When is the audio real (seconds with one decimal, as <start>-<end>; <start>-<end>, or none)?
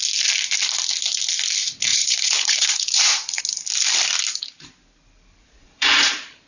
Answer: 0.0-1.9; 3.4-5.4; 6.1-6.5